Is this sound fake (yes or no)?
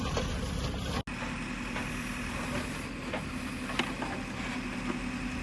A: no